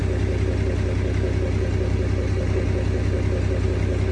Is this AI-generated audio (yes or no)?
no